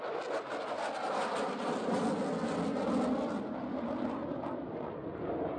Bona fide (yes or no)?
yes